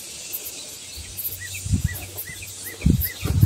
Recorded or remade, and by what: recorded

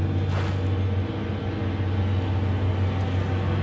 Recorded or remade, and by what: recorded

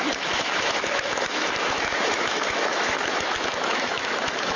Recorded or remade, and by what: remade, autoencoder, DAC-VAE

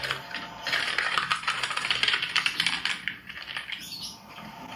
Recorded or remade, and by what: remade, vocoder, BigVGAN v2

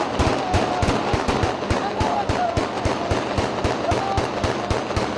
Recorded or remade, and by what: recorded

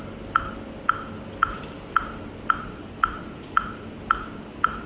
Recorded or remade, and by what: recorded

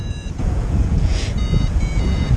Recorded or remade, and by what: remade, vocoder, Vocos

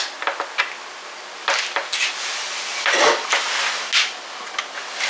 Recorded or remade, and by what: recorded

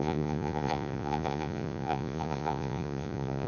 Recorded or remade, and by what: remade, vocoder, Vocos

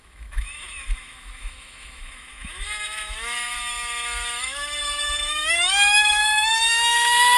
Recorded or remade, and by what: remade, autoencoder, DAC-VAE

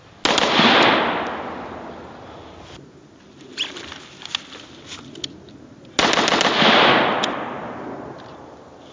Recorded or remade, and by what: recorded